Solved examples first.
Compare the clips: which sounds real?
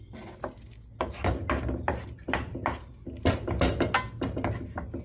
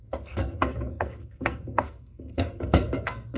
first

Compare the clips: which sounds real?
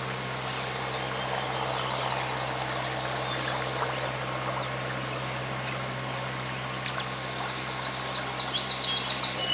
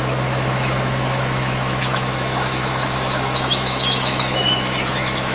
first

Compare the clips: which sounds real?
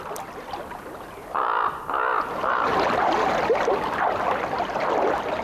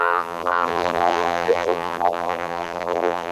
first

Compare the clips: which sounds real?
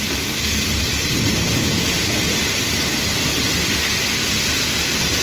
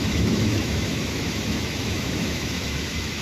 first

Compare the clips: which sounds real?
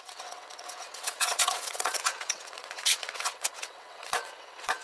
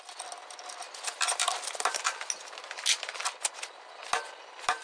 second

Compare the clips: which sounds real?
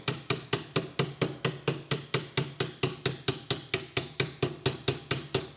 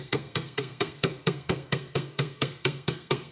first